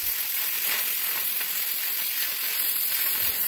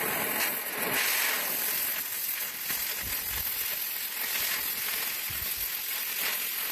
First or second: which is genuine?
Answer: second